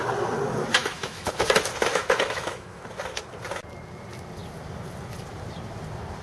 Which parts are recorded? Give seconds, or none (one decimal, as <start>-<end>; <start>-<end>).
0.0-0.8; 1.4-1.9; 2.8-6.2